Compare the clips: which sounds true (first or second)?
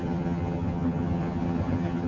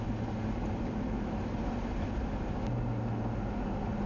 second